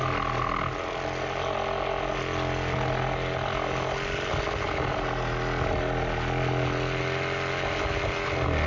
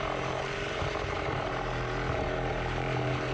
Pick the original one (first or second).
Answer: first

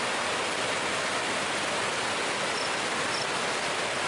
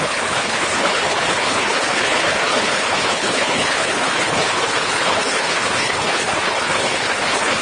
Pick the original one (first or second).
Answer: first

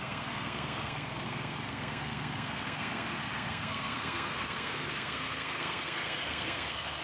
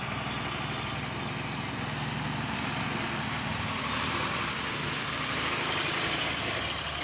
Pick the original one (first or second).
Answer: second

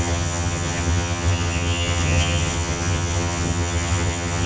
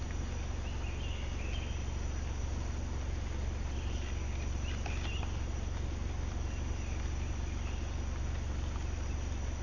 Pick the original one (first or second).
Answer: second